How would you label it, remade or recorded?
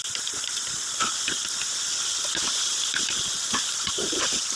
recorded